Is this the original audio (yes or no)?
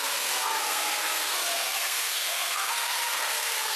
no